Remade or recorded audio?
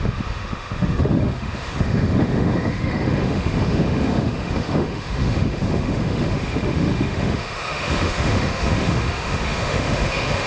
remade